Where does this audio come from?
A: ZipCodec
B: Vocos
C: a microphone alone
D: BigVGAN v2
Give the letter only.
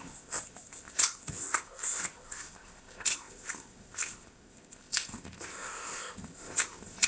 A